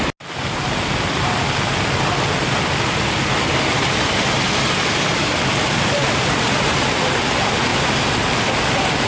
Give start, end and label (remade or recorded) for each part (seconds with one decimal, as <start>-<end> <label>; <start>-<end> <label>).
0.0-6.0 recorded; 6.0-7.2 remade; 7.2-7.7 recorded; 7.7-8.4 remade; 8.4-9.1 recorded